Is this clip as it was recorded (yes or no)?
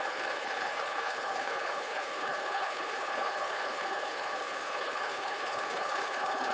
no